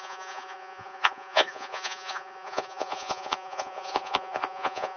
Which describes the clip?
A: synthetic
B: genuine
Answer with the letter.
A